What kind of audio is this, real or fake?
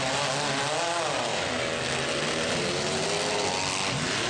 real